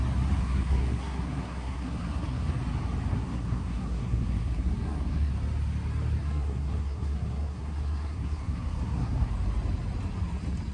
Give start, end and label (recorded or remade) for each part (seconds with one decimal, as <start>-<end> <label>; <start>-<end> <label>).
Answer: 0.0-0.4 recorded; 0.4-2.5 remade; 2.5-3.1 recorded; 3.1-5.3 remade; 5.3-6.2 recorded; 6.2-9.3 remade; 9.3-10.7 recorded